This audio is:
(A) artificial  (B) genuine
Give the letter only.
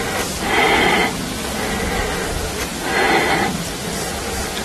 B